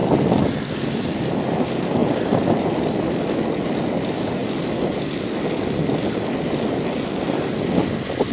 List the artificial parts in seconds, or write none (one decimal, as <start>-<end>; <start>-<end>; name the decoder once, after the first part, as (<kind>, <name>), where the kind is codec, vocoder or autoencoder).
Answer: none